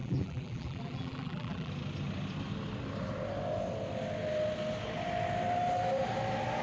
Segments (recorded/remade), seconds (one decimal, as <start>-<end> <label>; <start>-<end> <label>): 0.0-1.7 remade; 1.7-6.6 recorded